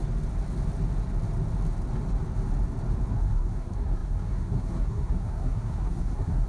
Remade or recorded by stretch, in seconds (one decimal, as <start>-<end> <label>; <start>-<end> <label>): 0.0-3.1 recorded; 3.1-6.5 remade